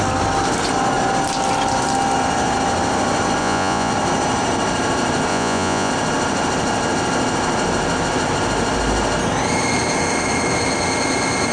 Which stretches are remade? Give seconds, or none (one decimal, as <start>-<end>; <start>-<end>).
3.4-3.9; 5.3-5.9